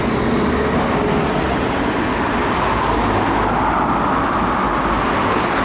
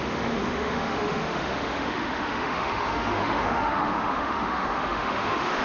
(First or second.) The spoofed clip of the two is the second